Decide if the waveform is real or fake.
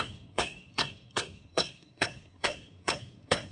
fake